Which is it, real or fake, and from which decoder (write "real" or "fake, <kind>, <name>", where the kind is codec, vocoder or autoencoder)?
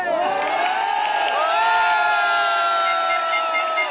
real